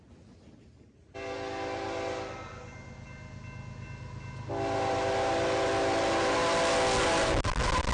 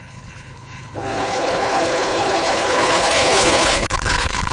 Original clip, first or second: first